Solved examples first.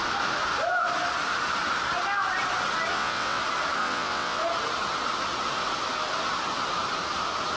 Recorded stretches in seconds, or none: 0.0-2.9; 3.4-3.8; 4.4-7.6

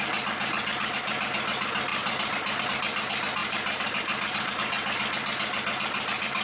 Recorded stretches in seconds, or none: 0.0-1.9; 2.6-3.4; 4.5-6.4

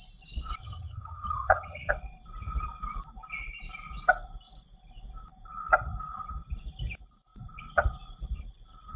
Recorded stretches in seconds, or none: 0.0-0.6; 1.9-9.0

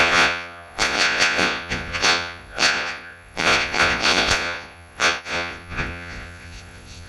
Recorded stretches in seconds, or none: none

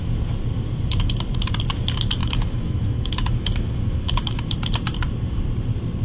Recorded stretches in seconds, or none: 0.0-2.2; 4.4-6.0